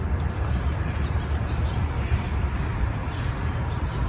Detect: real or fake real